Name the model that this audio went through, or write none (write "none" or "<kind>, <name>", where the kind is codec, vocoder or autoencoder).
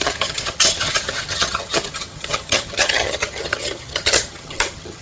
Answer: vocoder, HiFi-GAN